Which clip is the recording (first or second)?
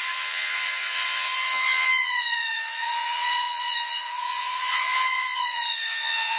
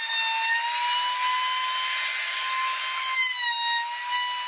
second